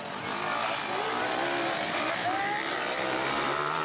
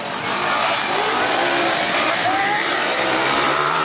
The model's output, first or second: second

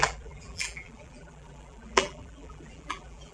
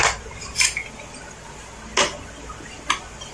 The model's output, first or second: first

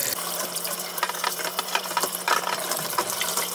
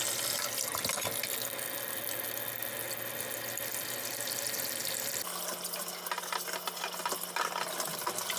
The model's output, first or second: first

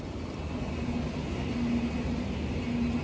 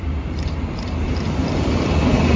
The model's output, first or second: second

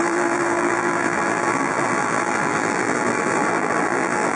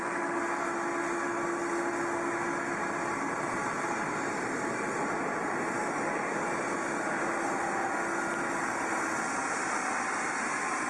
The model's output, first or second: first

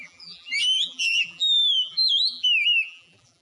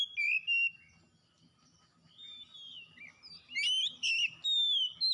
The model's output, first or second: first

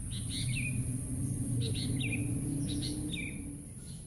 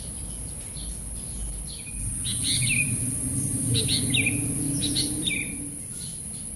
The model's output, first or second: second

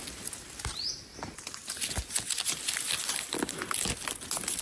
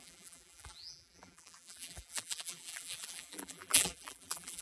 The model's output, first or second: second